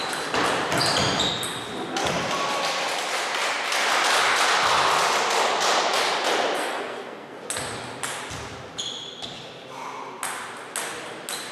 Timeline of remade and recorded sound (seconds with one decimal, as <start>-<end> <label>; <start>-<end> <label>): 0.0-6.6 recorded; 6.6-7.4 remade; 7.4-11.5 recorded